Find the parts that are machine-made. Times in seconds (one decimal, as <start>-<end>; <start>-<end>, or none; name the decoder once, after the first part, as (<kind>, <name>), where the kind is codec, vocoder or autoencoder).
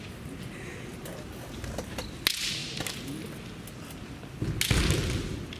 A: 0.9-1.5 (vocoder, BigVGAN v2)